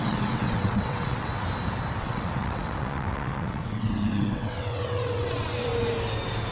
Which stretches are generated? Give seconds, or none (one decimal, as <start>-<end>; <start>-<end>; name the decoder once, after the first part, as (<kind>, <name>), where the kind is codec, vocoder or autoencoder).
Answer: 0.0-1.3 (vocoder, WaveNeXt); 2.0-5.7